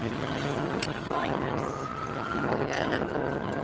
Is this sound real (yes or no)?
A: no